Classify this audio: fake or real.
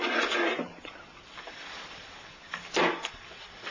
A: fake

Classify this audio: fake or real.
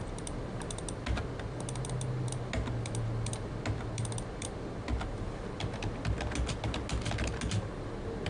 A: real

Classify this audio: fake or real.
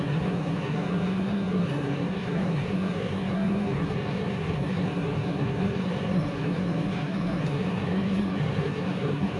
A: fake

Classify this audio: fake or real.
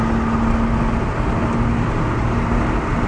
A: real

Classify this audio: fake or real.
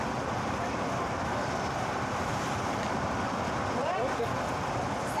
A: fake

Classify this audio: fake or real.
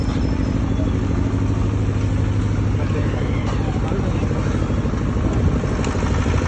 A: real